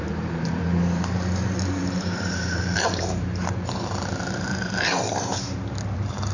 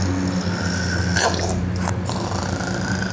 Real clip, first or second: second